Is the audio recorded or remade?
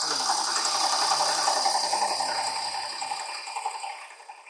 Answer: recorded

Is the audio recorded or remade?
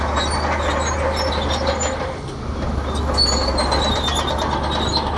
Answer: recorded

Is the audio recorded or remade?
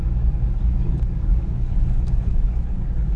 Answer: remade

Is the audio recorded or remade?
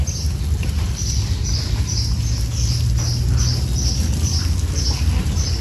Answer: recorded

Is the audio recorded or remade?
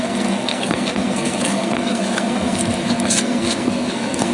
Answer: remade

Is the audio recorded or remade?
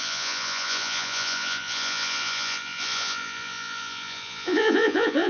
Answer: remade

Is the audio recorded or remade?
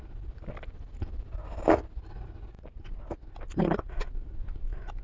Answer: recorded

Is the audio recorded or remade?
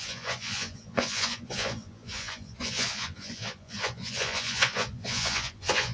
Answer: remade